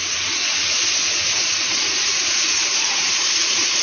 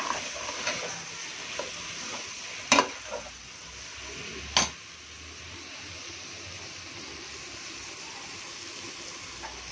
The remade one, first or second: first